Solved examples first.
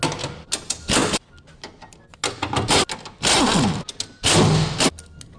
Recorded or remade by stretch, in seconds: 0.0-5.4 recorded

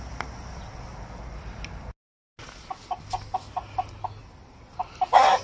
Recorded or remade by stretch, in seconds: 0.0-5.4 recorded